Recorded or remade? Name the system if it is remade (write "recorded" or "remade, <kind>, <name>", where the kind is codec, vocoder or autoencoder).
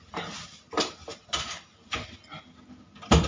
recorded